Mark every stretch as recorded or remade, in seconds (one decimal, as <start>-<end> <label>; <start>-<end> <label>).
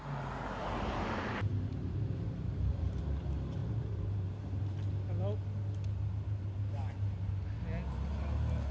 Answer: 0.0-0.6 recorded; 0.6-3.0 remade; 3.0-3.6 recorded; 3.6-4.6 remade; 4.6-8.7 recorded